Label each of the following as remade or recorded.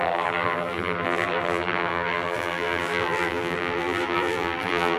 remade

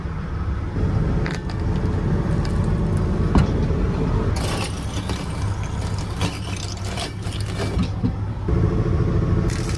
recorded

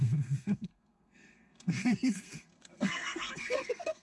remade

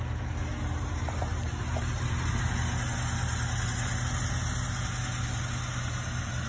recorded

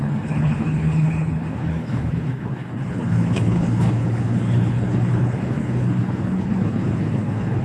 remade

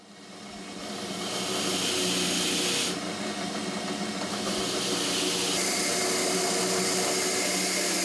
recorded